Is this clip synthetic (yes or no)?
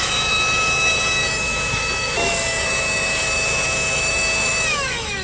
yes